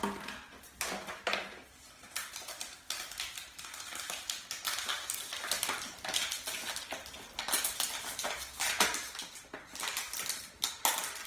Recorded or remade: recorded